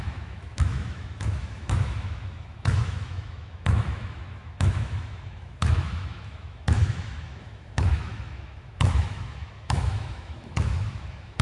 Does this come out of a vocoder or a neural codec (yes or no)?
yes